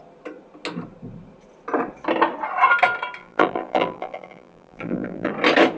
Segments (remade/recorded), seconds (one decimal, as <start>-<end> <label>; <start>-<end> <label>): 0.0-3.2 recorded; 3.2-5.3 remade; 5.3-5.8 recorded